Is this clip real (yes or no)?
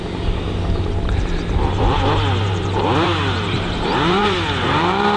no